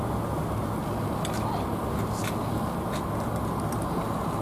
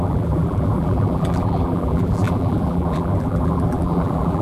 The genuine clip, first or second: first